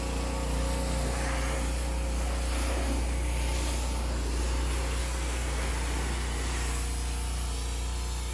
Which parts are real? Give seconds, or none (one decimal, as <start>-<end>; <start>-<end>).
0.0-5.0; 5.7-8.3

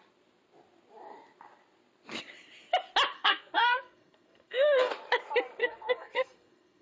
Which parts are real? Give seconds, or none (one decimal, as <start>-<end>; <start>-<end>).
0.0-3.1; 4.9-5.6